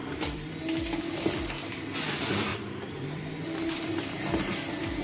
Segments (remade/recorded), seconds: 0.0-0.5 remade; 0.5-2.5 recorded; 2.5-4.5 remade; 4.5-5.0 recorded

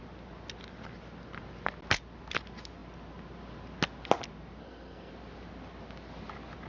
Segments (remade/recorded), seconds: 0.0-4.6 recorded; 4.6-5.1 remade; 5.1-6.7 recorded

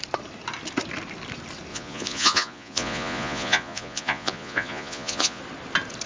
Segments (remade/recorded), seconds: 0.0-1.7 recorded; 1.7-5.4 remade; 5.4-6.1 recorded